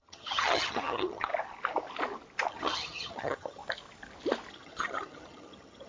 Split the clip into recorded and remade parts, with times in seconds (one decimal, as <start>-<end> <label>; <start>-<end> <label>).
0.0-1.3 remade; 1.3-2.5 recorded; 2.5-3.6 remade; 3.6-4.5 recorded; 4.5-5.9 remade

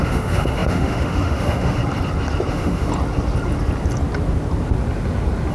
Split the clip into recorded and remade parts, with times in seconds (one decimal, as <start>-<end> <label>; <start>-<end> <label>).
0.0-1.8 remade; 1.8-2.5 recorded; 2.5-2.9 remade; 2.9-5.5 recorded